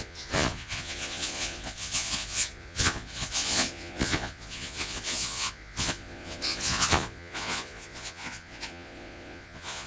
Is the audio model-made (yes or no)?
yes